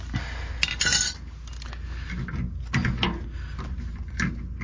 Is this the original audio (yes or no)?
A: yes